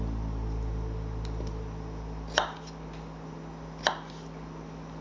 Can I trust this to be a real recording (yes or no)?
yes